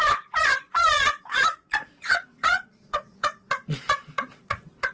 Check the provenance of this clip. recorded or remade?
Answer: remade